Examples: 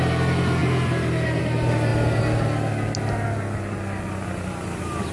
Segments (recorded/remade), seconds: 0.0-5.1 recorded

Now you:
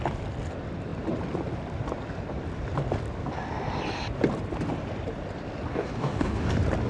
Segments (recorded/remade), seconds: 0.0-5.7 recorded; 5.7-6.5 remade; 6.5-6.9 recorded

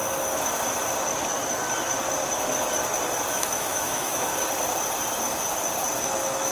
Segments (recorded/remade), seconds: 0.0-3.3 recorded; 3.3-4.3 remade; 4.3-6.0 recorded; 6.0-6.5 remade

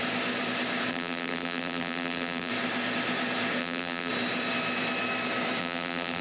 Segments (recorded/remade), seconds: 0.0-0.9 recorded; 0.9-2.5 remade; 2.5-3.6 recorded; 3.6-4.1 remade; 4.1-5.6 recorded; 5.6-6.2 remade

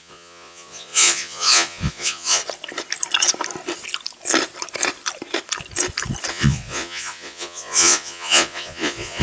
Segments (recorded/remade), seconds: 0.0-2.4 remade; 2.4-6.3 recorded; 6.3-9.2 remade

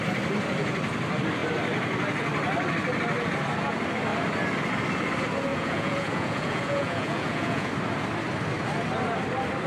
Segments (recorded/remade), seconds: 0.0-5.5 recorded; 5.5-7.7 remade; 7.7-9.7 recorded

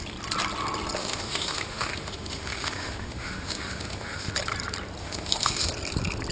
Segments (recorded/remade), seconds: 0.0-1.0 recorded; 1.0-4.3 remade; 4.3-5.0 recorded; 5.0-5.7 remade; 5.7-6.3 recorded

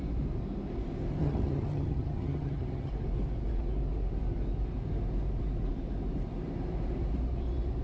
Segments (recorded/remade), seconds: 0.0-1.2 recorded; 1.2-2.9 remade; 2.9-7.8 recorded